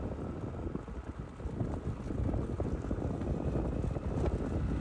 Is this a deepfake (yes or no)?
no